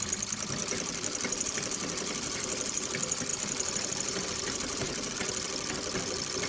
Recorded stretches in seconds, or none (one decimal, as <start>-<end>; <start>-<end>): 0.0-0.6; 2.9-3.3; 5.1-6.5